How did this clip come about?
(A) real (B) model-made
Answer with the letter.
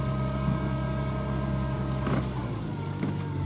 B